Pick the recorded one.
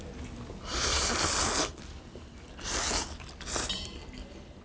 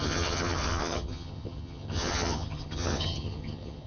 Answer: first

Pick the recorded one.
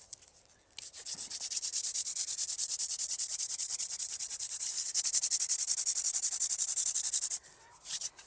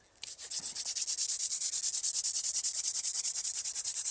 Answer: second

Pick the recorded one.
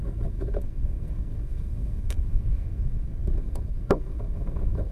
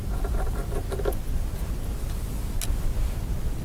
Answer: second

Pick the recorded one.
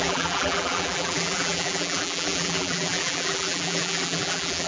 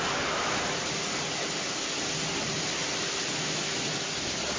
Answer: second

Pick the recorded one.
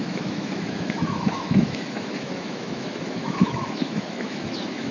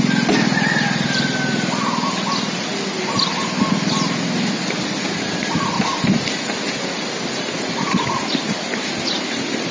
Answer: second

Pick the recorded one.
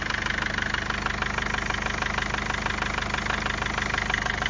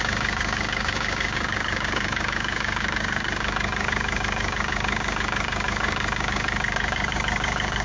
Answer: first